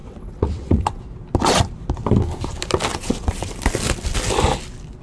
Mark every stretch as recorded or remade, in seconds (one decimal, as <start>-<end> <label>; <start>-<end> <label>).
0.0-1.0 remade; 1.0-2.9 recorded; 2.9-3.5 remade; 3.5-5.0 recorded